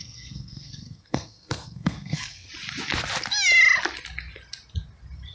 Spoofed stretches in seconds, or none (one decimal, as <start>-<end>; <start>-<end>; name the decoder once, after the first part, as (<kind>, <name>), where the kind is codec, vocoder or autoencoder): 0.0-2.5 (codec, SNAC)